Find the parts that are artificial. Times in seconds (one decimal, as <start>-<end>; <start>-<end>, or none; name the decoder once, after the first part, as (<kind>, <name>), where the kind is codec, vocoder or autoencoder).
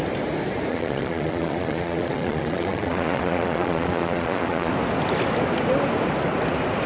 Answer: 0.7-4.7 (vocoder, Vocos)